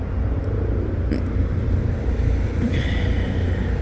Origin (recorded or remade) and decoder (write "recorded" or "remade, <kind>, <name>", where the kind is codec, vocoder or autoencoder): recorded